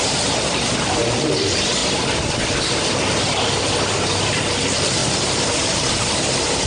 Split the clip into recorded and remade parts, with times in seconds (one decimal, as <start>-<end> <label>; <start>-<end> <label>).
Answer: 0.0-1.8 remade; 1.8-4.0 recorded; 4.0-6.7 remade